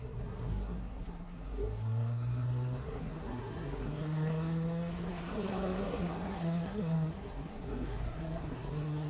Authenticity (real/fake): fake